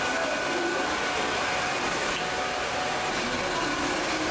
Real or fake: real